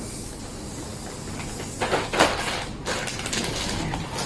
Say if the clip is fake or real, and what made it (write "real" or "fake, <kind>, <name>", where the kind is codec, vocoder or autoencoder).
real